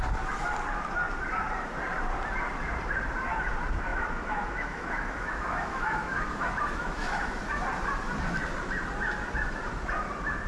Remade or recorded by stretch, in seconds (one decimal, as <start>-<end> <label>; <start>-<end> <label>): 0.0-3.9 recorded; 3.9-7.4 remade; 7.4-10.5 recorded